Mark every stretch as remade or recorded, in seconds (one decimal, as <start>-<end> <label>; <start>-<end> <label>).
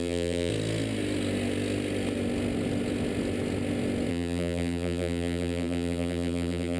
0.0-0.5 remade; 0.5-4.1 recorded; 4.1-6.8 remade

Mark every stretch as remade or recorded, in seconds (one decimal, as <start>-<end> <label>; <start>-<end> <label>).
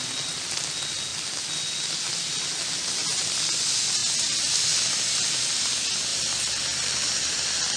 0.0-6.1 recorded; 6.1-6.6 remade; 6.6-7.8 recorded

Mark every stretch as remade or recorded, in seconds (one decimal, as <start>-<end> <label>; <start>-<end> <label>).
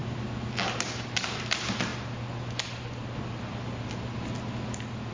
0.0-5.1 recorded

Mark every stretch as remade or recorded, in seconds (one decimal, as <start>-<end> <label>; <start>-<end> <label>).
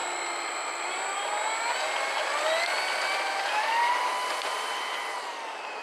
0.0-3.1 recorded; 3.1-5.8 remade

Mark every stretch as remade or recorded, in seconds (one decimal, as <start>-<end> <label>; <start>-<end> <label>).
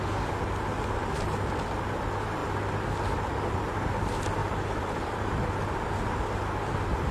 0.0-4.4 recorded; 4.4-5.3 remade; 5.3-7.1 recorded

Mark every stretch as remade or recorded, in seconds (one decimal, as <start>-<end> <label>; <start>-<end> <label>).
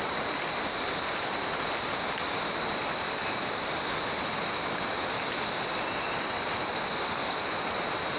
0.0-3.2 recorded; 3.2-3.7 remade; 3.7-8.2 recorded